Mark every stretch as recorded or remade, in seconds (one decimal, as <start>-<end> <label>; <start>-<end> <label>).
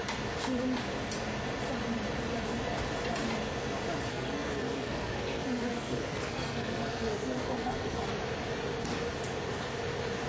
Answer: 0.0-4.1 recorded; 4.1-8.0 remade; 8.0-10.3 recorded